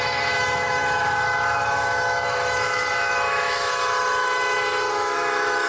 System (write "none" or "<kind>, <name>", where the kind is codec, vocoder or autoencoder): autoencoder, DAC-VAE